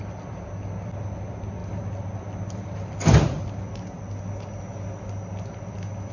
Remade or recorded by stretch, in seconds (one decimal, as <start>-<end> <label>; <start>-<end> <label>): 0.0-1.6 recorded; 1.6-3.7 remade; 3.7-6.1 recorded